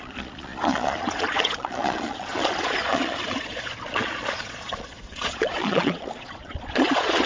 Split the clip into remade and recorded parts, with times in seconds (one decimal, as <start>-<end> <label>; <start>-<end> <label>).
0.0-7.3 remade